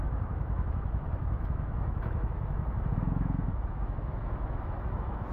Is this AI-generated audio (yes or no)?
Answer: yes